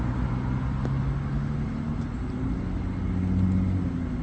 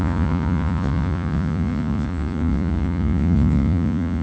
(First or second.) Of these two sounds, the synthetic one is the second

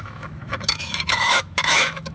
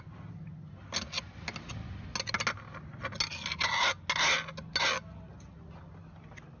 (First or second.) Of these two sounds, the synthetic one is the first